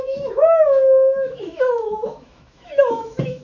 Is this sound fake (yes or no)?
yes